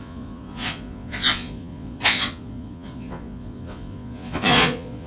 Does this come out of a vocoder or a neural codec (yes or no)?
yes